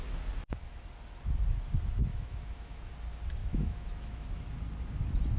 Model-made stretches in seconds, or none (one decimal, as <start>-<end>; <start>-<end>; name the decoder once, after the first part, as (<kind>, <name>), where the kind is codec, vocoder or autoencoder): 2.1-2.9 (autoencoder, DAC-VAE); 3.4-4.3